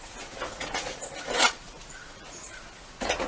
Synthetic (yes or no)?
yes